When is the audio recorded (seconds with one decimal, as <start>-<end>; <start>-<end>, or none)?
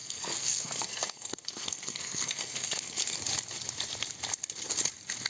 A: 3.2-5.3